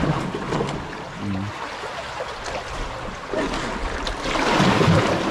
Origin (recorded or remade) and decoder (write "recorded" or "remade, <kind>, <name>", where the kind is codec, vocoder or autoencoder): recorded